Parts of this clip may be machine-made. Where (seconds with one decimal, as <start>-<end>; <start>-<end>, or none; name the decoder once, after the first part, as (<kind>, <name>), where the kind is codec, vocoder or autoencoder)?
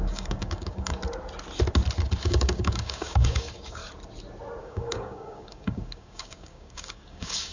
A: 0.0-1.0 (codec, DAC); 2.2-3.8; 4.6-7.5